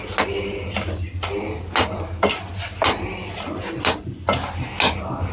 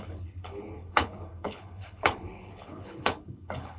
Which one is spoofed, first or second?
second